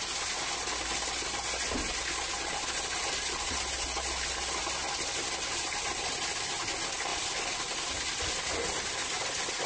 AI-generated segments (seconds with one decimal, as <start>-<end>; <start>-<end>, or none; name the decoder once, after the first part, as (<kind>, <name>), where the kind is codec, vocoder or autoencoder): 7.1-7.6 (vocoder, BigVGAN v2)